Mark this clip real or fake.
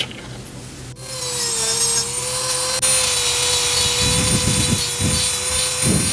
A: real